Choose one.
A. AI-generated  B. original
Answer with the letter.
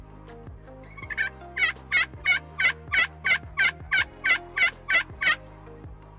B